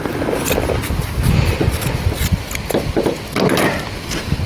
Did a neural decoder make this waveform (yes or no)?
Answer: no